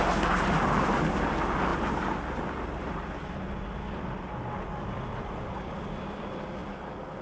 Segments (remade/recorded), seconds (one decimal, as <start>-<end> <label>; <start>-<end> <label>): 0.0-7.2 recorded